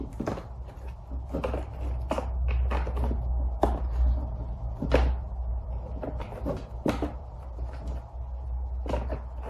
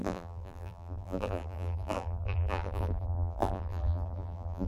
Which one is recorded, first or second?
first